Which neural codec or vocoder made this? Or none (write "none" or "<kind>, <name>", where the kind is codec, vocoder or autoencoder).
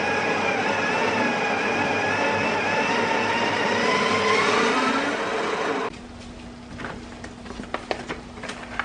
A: none